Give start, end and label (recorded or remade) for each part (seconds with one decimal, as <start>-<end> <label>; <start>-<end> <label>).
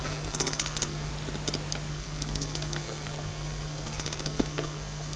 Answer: 0.0-1.1 remade; 1.1-1.9 recorded; 1.9-5.2 remade